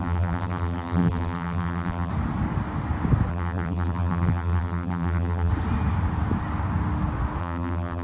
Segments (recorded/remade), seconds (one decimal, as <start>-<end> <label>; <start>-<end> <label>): 0.0-2.1 remade; 2.1-3.3 recorded; 3.3-5.5 remade; 5.5-7.4 recorded; 7.4-8.0 remade